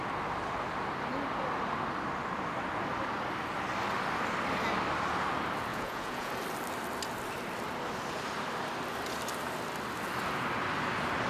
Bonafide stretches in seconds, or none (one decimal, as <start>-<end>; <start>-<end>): 0.0-5.7; 6.3-11.3